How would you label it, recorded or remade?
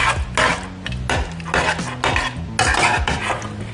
recorded